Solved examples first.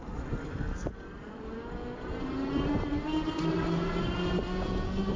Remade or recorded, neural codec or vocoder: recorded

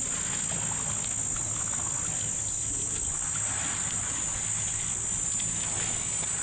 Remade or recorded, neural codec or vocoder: recorded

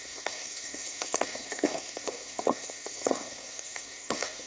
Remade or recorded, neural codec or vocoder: remade, codec, SNAC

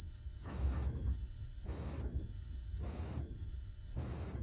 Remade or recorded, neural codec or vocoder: remade, autoencoder, DAC-VAE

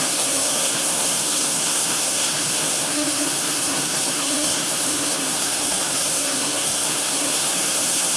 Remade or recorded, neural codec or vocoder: remade, codec, SNAC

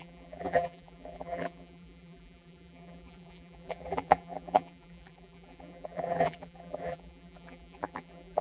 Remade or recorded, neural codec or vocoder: remade, vocoder, BigVGAN v2